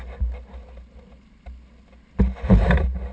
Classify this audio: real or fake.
real